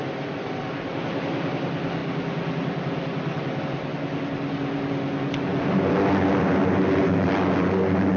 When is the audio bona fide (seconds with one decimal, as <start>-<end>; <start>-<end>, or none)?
0.0-8.2